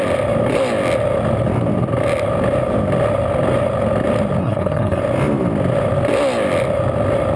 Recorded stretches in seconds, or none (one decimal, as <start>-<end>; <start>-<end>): 0.0-4.4; 5.0-7.4